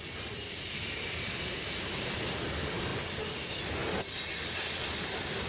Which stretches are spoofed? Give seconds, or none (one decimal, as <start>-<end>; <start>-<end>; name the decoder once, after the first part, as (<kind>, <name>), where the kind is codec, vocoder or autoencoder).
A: none